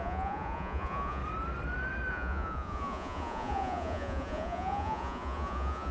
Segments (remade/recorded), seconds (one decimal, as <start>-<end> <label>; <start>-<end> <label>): 0.0-1.2 remade; 1.2-2.1 recorded; 2.1-5.9 remade